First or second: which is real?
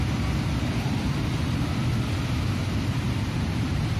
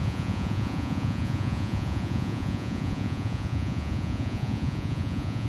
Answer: first